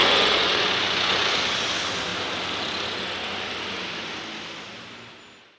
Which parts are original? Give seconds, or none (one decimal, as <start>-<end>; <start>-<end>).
1.4-5.6